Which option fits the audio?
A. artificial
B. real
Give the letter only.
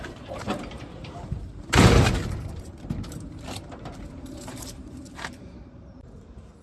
A